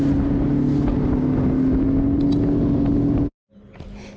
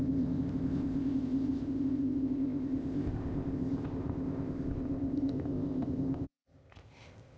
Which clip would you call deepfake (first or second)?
second